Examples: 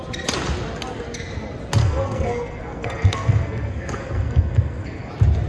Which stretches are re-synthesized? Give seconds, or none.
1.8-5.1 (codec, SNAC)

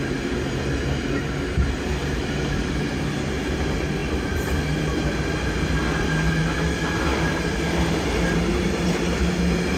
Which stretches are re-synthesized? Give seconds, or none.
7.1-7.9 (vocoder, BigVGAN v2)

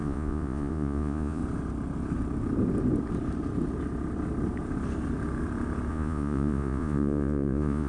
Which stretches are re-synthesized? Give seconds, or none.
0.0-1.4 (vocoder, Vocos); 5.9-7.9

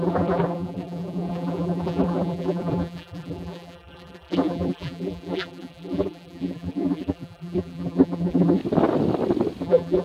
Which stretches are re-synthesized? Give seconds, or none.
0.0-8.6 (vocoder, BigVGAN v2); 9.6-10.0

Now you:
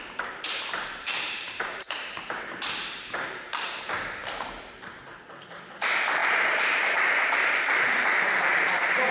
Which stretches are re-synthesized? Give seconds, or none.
0.0-9.1 (vocoder, BigVGAN v2)

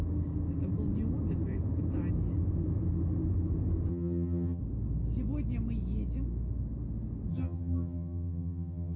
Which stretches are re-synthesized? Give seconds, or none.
3.9-4.6 (vocoder, HiFi-GAN); 7.3-9.0

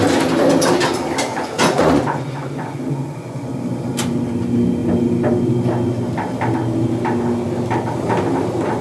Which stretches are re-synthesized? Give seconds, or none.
1.3-3.5 (vocoder, Vocos)

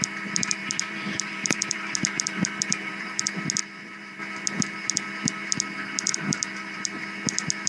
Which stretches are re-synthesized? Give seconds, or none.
0.6-3.2 (vocoder, BigVGAN v2); 3.6-4.2; 6.1-7.0